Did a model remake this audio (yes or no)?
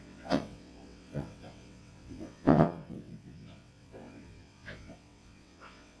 yes